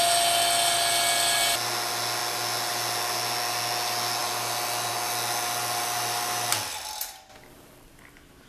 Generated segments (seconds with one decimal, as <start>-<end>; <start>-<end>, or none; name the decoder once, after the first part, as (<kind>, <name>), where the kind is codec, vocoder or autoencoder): none

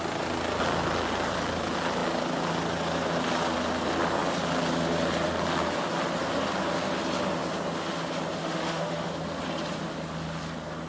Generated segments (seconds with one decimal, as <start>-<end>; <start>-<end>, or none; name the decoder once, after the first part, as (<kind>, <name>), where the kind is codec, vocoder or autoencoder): 8.4-9.1 (autoencoder, DAC-VAE)